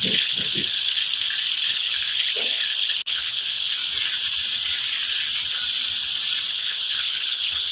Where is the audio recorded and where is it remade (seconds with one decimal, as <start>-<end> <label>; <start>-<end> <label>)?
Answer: 0.0-1.0 remade; 1.0-1.6 recorded; 1.6-3.8 remade; 3.8-6.5 recorded; 6.5-7.7 remade